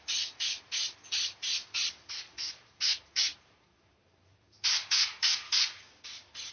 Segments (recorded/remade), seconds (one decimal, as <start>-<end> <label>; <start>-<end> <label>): 0.0-1.4 recorded; 1.4-5.3 remade; 5.3-6.5 recorded